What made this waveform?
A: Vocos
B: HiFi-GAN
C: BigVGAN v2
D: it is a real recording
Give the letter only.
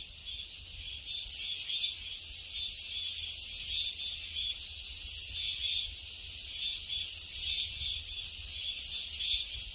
D